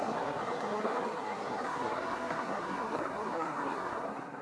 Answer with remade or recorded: remade